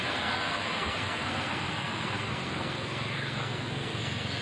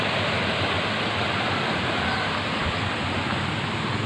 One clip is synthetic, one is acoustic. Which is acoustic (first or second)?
second